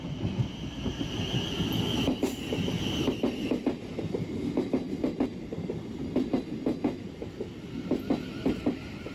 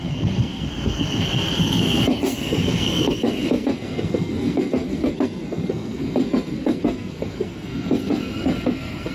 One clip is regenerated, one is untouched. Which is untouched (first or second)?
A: first